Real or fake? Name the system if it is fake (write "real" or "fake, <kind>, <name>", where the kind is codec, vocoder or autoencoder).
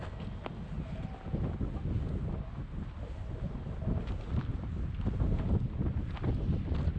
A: real